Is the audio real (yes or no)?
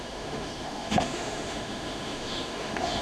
no